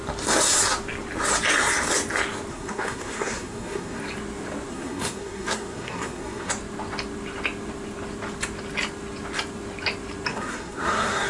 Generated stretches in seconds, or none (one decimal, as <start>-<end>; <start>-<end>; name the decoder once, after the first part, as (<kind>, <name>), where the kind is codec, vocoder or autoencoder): 2.5-4.0 (codec, SNAC); 4.7-6.5; 10.3-11.3